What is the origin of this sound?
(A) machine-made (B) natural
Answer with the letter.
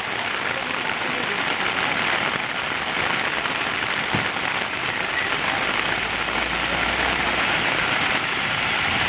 B